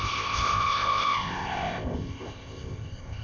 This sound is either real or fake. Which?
fake